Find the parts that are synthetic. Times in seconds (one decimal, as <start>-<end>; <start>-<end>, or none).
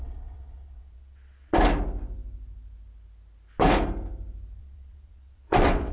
0.0-1.5; 4.6-5.9